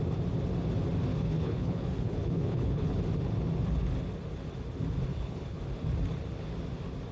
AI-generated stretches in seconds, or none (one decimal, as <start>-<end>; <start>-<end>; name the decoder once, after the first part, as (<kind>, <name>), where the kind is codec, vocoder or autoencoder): 1.1-3.0 (codec, HILCodec); 5.1-5.6